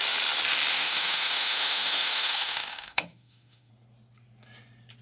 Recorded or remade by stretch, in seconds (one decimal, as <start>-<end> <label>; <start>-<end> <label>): 0.0-0.7 recorded; 0.7-3.7 remade; 3.7-5.0 recorded